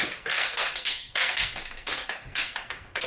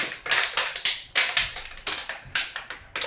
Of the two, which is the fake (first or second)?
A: first